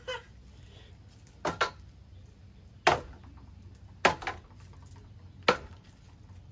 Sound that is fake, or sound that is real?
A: real